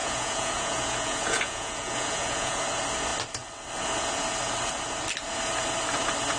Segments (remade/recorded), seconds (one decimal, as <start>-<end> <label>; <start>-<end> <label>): 0.0-2.6 remade; 2.6-6.4 recorded